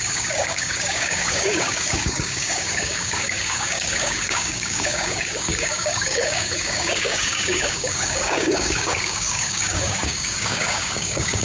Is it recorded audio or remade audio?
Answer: remade